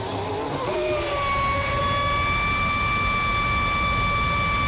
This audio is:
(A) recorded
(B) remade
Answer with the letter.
A